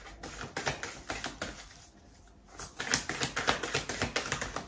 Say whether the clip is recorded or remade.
recorded